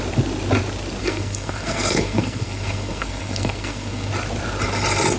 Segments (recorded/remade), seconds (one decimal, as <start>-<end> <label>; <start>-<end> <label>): 0.0-1.0 recorded; 1.0-4.1 remade; 4.1-5.2 recorded